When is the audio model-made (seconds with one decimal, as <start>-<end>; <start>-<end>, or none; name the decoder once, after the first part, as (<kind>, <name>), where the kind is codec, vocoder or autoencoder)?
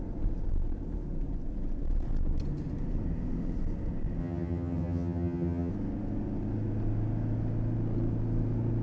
4.2-5.7 (vocoder, HiFi-GAN)